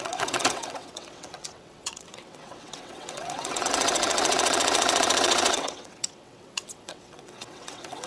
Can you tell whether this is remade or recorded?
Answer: remade